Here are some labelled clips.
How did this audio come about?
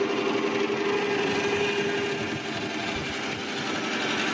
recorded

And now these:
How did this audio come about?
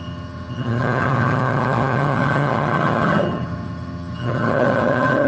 remade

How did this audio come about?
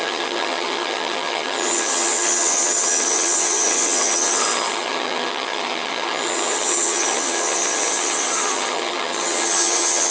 remade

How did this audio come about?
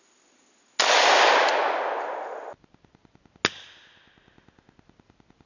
recorded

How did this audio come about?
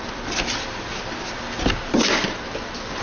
recorded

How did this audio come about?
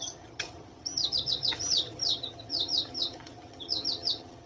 remade